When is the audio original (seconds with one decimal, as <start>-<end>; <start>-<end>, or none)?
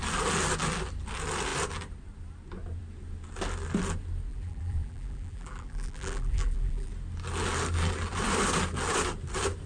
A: 0.0-4.3; 6.9-9.7